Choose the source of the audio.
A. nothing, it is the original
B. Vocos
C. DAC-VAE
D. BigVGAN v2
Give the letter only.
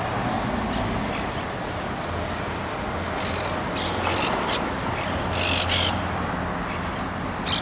A